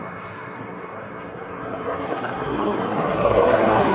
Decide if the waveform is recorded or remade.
remade